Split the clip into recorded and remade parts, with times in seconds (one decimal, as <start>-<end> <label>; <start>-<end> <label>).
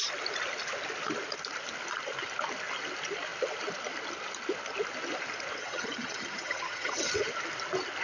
0.0-5.6 recorded; 5.6-7.1 remade; 7.1-8.0 recorded